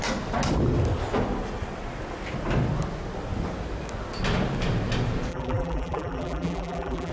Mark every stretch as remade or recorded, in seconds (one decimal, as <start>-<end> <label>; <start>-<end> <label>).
0.0-5.3 recorded; 5.3-7.1 remade

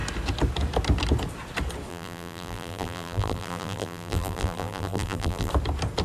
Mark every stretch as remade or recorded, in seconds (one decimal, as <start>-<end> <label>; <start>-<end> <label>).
0.0-1.9 recorded; 1.9-5.5 remade; 5.5-6.0 recorded

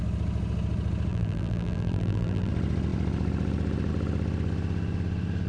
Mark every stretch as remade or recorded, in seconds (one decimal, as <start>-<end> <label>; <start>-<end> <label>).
0.0-1.1 recorded; 1.1-2.5 remade; 2.5-5.5 recorded

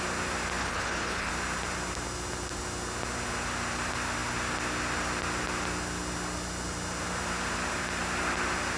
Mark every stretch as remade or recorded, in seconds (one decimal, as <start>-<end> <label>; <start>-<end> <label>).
0.0-0.6 recorded; 0.6-1.3 remade; 1.3-8.8 recorded

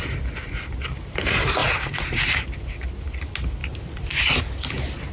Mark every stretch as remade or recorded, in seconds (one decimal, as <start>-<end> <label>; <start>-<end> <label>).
0.0-1.6 recorded; 1.6-2.8 remade; 2.8-3.6 recorded; 3.6-4.2 remade; 4.2-5.1 recorded

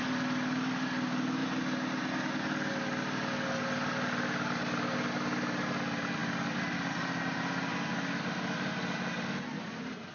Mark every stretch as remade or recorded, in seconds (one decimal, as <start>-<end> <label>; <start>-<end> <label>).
0.0-10.1 recorded

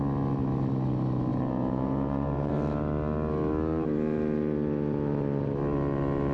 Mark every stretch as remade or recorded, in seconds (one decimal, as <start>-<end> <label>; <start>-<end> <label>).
0.0-1.3 recorded; 1.3-2.5 remade; 2.5-6.3 recorded

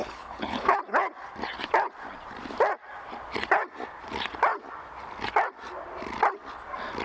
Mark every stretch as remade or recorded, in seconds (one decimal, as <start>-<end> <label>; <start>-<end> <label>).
0.0-0.8 remade; 0.8-7.0 recorded